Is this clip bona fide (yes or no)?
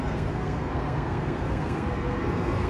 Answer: no